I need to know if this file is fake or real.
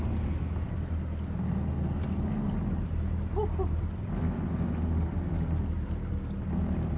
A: real